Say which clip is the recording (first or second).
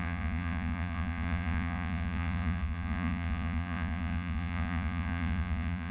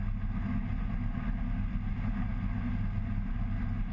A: second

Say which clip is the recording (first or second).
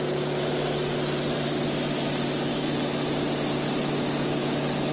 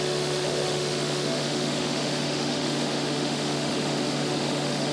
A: first